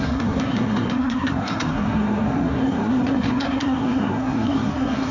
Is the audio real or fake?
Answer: fake